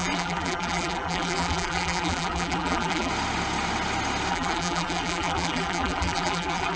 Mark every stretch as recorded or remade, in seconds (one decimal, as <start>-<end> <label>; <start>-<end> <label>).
0.0-3.1 remade; 3.1-4.3 recorded; 4.3-6.8 remade